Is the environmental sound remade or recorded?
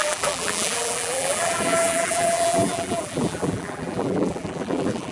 remade